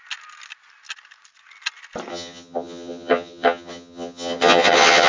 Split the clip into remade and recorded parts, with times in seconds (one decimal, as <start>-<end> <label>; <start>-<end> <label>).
0.0-2.1 recorded; 2.1-5.1 remade